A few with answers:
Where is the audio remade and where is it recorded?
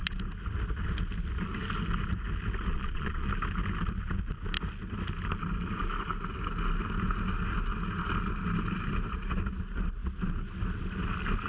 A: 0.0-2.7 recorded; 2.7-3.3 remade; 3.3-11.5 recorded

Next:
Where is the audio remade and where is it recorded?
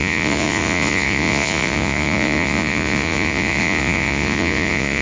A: 0.0-5.0 remade